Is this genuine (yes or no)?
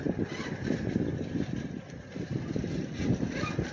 yes